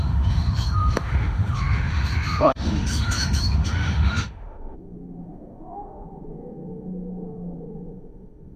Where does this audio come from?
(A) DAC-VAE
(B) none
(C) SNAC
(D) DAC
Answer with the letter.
A